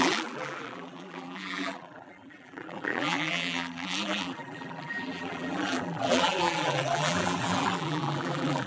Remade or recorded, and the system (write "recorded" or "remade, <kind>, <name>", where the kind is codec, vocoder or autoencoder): remade, vocoder, BigVGAN v2